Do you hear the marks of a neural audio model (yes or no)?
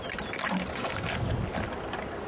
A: no